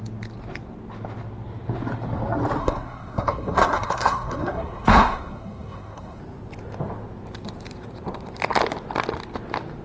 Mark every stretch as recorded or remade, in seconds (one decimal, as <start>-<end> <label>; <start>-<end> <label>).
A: 0.0-2.6 recorded; 2.6-6.2 remade; 6.2-9.8 recorded